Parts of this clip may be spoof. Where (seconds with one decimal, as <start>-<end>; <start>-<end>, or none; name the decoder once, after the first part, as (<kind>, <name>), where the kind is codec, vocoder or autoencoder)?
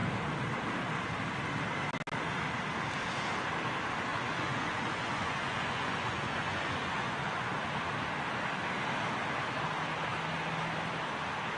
4.1-7.5 (vocoder, Vocos)